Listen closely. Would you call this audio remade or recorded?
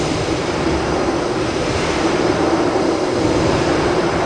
remade